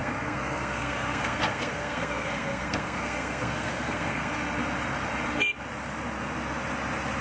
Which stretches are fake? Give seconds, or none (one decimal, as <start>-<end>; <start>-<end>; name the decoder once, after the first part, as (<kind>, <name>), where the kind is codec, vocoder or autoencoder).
0.0-4.3 (codec, SNAC)